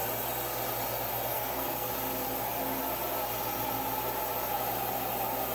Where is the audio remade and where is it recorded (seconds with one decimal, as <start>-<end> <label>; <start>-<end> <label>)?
0.0-1.3 recorded; 1.3-1.9 remade; 1.9-5.5 recorded